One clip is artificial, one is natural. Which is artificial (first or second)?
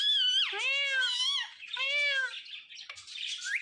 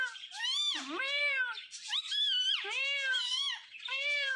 second